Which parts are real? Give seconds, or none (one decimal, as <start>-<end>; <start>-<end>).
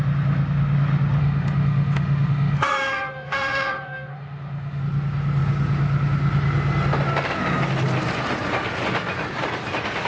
0.0-1.2; 4.8-10.1